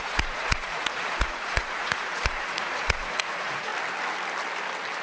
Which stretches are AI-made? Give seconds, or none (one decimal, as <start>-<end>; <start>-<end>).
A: 0.0-3.7